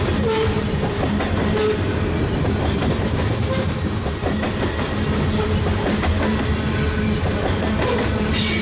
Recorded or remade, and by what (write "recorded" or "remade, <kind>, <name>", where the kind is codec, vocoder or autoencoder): recorded